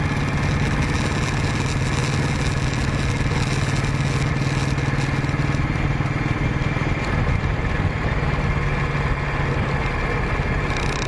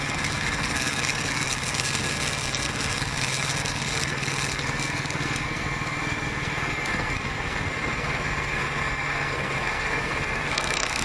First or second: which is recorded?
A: first